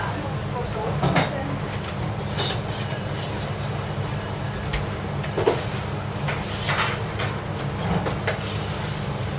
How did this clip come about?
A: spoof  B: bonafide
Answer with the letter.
B